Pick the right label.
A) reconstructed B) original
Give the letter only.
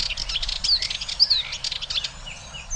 B